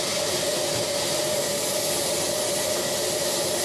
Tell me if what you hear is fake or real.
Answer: real